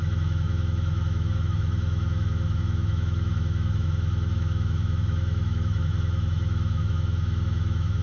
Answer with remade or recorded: remade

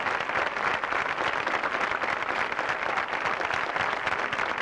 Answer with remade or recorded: recorded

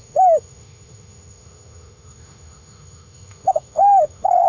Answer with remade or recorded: remade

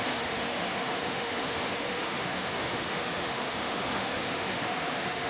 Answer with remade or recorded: remade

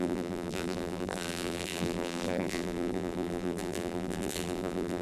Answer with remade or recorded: remade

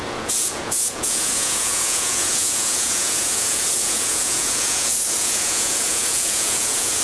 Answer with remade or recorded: remade